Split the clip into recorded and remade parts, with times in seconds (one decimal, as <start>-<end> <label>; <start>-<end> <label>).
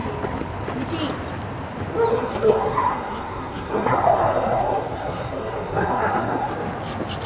0.0-2.1 recorded; 2.1-6.5 remade; 6.5-7.3 recorded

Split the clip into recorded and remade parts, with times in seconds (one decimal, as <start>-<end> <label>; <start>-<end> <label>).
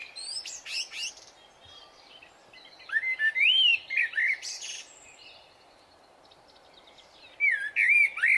0.0-3.7 recorded; 3.7-6.2 remade; 6.2-8.4 recorded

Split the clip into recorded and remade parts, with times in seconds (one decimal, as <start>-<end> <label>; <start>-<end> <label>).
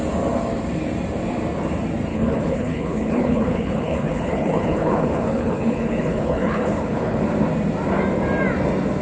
0.0-2.1 recorded; 2.1-7.2 remade; 7.2-9.0 recorded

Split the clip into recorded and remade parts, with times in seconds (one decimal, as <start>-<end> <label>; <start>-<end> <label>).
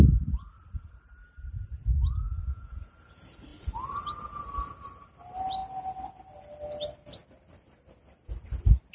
0.0-2.4 recorded; 2.4-2.9 remade; 2.9-8.9 recorded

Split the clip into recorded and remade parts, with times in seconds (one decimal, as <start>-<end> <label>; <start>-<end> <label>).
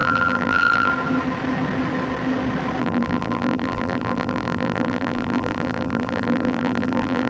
0.0-0.9 remade; 0.9-2.8 recorded; 2.8-7.3 remade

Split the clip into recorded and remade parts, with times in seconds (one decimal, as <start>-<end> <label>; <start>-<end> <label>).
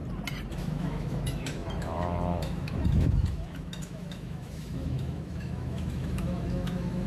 0.0-0.5 recorded; 0.5-7.1 remade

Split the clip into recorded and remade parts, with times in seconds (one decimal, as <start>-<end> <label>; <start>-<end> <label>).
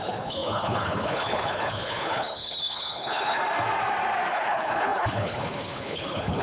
0.0-3.4 remade; 3.4-4.3 recorded; 4.3-6.4 remade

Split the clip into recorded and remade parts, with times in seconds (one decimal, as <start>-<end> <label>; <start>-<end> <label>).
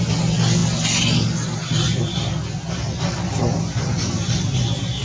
0.0-5.0 recorded